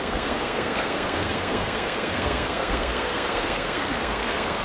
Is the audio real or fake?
fake